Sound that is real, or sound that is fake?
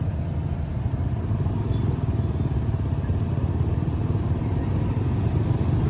real